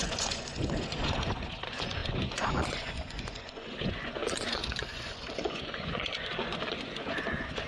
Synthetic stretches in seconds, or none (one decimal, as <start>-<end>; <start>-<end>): 0.0-7.7